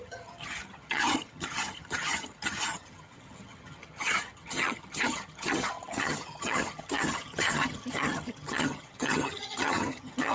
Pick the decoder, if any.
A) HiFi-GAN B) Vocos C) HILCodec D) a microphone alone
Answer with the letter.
A